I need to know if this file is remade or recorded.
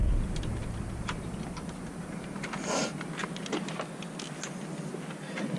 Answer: recorded